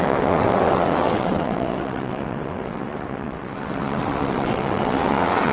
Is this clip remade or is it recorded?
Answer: remade